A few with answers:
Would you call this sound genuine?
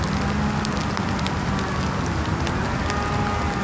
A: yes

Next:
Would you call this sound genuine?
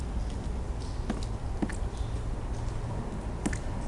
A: yes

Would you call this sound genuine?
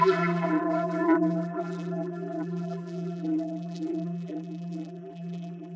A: no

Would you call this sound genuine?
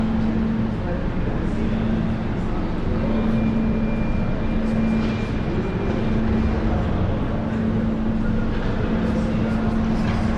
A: yes